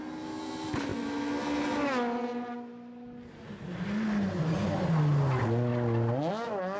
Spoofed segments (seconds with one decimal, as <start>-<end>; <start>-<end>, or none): none